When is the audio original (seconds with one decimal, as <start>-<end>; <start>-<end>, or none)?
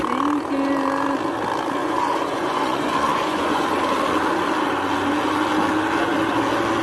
0.0-1.8; 3.8-6.8